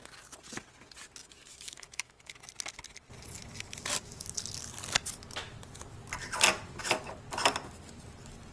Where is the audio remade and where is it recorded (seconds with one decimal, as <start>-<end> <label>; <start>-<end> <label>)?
0.0-1.2 recorded; 1.2-2.4 remade; 2.4-8.5 recorded